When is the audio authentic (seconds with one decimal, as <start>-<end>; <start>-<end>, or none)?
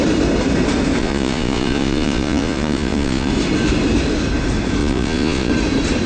0.0-1.0; 3.3-4.8; 5.5-6.1